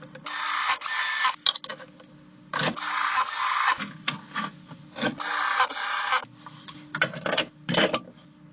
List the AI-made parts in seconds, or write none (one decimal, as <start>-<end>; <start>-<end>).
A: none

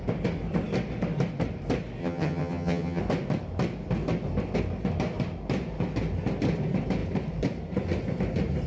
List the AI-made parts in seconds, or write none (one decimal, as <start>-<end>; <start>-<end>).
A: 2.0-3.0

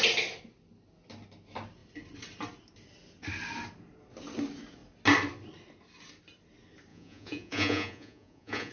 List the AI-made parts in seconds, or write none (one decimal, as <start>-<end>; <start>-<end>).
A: 6.9-8.7

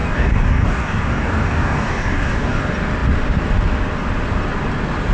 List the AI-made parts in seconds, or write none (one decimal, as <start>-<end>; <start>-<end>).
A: 0.0-2.6

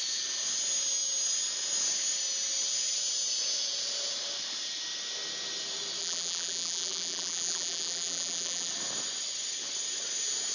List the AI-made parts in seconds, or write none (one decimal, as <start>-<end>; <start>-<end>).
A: 6.0-8.7

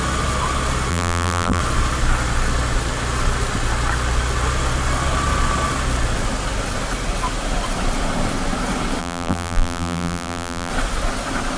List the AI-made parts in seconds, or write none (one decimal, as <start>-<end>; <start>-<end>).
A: 0.9-1.6; 9.0-10.7